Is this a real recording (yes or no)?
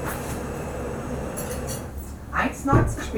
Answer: yes